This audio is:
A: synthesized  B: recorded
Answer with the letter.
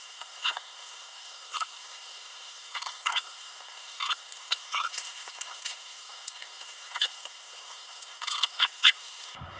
A